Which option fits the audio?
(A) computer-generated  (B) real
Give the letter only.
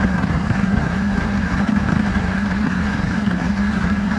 A